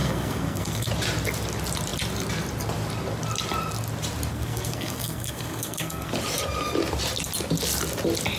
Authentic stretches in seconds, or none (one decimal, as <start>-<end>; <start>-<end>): 0.9-4.3; 6.1-8.4